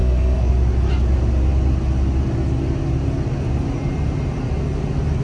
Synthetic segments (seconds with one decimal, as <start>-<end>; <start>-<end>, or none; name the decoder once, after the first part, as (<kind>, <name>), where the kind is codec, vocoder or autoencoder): 0.0-0.5 (codec, SNAC)